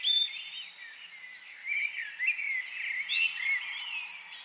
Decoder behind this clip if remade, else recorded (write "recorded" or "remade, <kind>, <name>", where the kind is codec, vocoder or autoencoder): recorded